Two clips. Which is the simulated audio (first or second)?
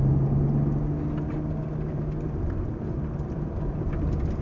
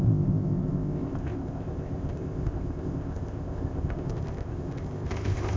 second